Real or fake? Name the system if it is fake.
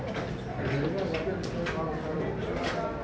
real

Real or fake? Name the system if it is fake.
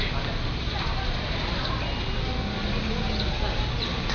real